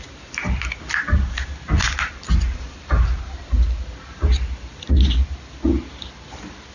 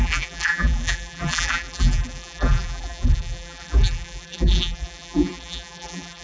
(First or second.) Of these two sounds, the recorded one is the first